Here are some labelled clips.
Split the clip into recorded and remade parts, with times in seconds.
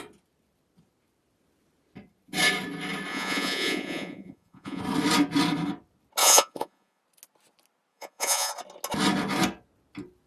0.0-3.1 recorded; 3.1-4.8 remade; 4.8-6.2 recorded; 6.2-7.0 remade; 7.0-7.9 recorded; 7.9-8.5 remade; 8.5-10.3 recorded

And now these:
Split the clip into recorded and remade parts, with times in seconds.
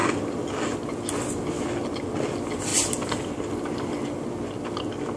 0.0-5.2 recorded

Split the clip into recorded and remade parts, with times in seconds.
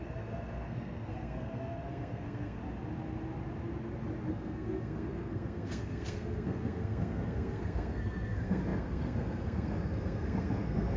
0.0-2.6 remade; 2.6-4.3 recorded; 4.3-11.0 remade